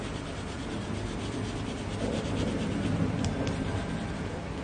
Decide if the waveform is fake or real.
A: real